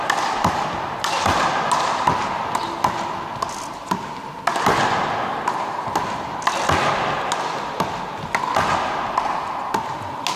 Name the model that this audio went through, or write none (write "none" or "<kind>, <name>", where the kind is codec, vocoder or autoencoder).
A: none